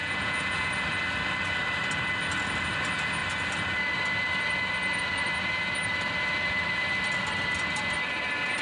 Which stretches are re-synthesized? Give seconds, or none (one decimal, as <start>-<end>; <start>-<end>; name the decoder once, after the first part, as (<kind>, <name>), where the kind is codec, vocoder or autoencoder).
0.0-0.7 (vocoder, Vocos)